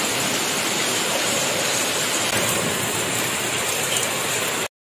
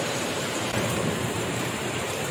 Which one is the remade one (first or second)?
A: second